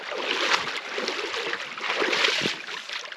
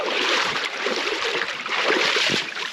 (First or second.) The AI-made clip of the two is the second